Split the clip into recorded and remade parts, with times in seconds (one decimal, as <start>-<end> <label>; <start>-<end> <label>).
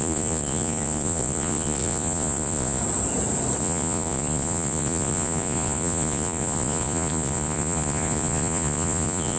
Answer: 0.0-2.8 remade; 2.8-3.6 recorded; 3.6-9.4 remade